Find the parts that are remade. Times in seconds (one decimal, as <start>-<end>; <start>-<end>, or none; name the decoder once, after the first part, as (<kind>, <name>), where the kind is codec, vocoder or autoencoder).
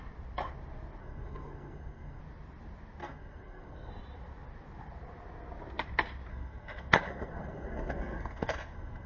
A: 1.0-2.2 (codec, SNAC); 3.0-3.9; 6.3-9.1